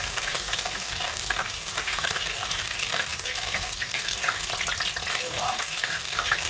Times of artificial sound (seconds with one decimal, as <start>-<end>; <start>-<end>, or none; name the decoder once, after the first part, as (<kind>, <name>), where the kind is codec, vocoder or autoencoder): 0.0-4.5 (codec, DAC); 5.1-6.5